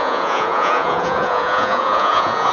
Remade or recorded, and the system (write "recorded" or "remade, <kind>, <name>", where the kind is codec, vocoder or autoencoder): remade, vocoder, Vocos